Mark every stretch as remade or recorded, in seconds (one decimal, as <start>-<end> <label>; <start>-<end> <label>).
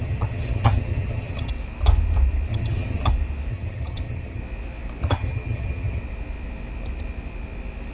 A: 0.0-1.5 remade; 1.5-2.5 recorded; 2.5-3.1 remade; 3.1-3.5 recorded; 3.5-4.4 remade; 4.4-5.0 recorded; 5.0-6.0 remade; 6.0-7.9 recorded